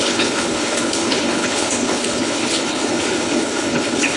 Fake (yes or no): yes